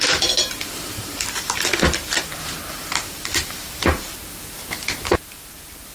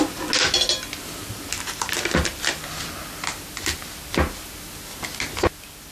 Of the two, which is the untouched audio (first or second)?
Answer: second